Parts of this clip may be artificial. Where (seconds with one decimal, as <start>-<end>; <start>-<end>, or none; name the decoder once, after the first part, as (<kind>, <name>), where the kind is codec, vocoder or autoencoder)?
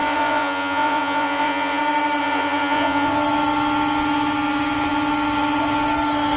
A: 0.0-1.8 (vocoder, Vocos); 2.2-3.1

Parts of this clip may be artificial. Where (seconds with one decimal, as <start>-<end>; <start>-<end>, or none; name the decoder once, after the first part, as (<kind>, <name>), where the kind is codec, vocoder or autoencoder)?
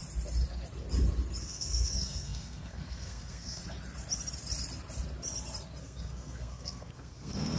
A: 1.4-3.6 (codec, SNAC); 5.8-7.6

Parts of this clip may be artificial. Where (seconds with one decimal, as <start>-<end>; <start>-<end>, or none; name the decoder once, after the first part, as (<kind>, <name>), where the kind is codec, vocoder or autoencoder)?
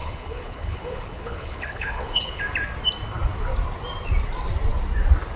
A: 0.0-2.4 (codec, HILCodec)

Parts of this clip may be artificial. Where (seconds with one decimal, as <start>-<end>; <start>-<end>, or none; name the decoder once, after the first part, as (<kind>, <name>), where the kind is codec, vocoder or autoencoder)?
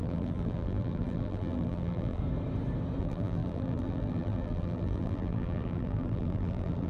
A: 0.0-2.2 (vocoder, BigVGAN v2); 3.0-6.9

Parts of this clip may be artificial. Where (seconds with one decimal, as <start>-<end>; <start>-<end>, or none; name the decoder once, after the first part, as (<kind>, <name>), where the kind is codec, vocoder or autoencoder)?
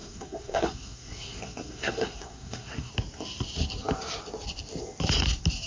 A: 0.0-2.9 (codec, SNAC)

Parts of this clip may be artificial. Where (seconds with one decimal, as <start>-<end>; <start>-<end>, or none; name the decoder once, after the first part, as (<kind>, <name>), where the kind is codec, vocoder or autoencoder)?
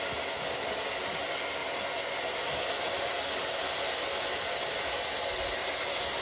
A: none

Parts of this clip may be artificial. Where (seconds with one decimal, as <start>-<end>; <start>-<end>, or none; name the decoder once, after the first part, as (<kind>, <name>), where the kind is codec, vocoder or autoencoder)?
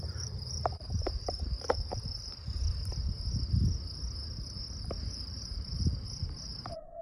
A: 0.0-2.6 (vocoder, BigVGAN v2); 4.9-7.0